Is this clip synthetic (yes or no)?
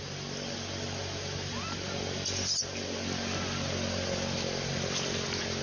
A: no